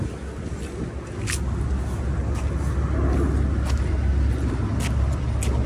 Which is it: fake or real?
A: real